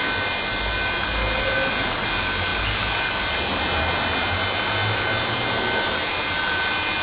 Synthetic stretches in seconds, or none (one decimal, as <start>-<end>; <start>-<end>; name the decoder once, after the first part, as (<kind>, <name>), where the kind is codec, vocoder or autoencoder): none